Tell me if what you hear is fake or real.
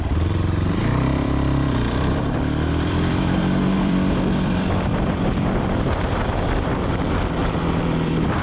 fake